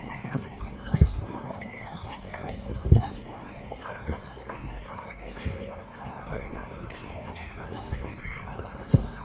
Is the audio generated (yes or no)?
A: yes